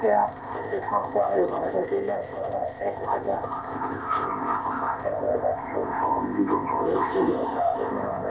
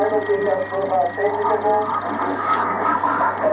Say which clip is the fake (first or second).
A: first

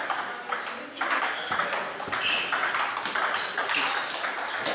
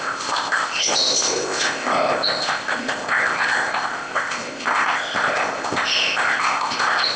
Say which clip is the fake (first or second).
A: second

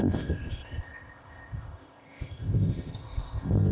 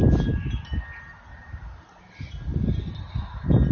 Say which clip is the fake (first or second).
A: first